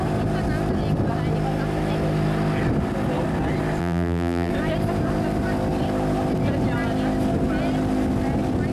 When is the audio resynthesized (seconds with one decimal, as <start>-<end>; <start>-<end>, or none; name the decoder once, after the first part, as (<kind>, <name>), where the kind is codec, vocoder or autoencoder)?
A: 3.8-4.5 (vocoder, BigVGAN v2)